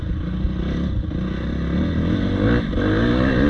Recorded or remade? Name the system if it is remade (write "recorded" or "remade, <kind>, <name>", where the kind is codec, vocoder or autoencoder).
recorded